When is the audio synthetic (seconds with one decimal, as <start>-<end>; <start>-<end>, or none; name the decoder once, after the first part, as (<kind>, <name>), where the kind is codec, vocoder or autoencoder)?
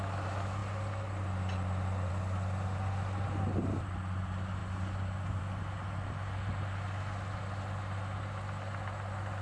none